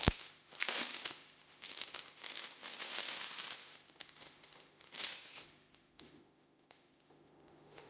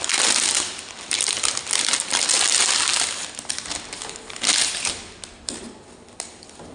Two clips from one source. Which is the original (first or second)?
second